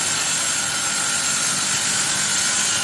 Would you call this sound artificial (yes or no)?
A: no